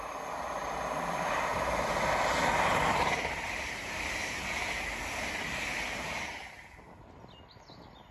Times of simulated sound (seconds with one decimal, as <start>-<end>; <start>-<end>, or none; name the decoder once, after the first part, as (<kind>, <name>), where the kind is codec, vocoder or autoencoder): none